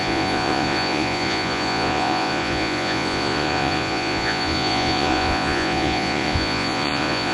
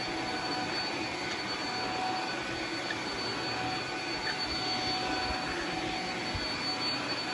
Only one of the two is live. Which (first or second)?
second